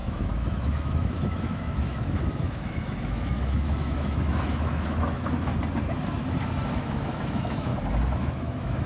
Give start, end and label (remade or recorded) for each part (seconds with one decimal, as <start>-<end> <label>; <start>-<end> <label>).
0.0-5.5 remade; 5.5-6.8 recorded; 6.8-7.7 remade; 7.7-8.2 recorded; 8.2-8.9 remade